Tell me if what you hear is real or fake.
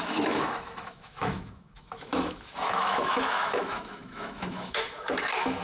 fake